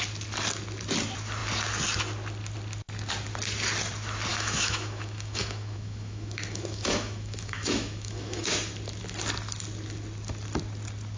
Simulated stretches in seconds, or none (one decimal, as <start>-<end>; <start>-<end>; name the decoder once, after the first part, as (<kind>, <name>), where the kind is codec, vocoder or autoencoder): 4.3-8.5 (autoencoder, DAC-VAE)